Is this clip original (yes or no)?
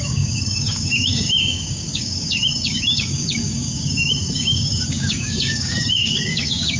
no